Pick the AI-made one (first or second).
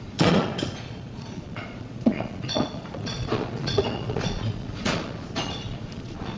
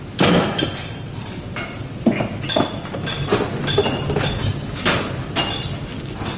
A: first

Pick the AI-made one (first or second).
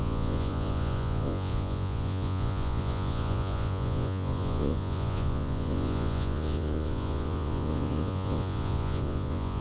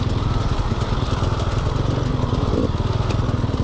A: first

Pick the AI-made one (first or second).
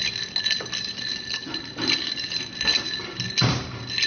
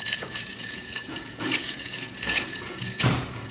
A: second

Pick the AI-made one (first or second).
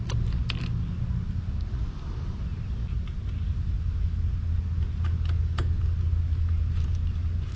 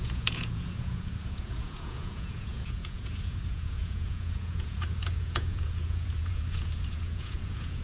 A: second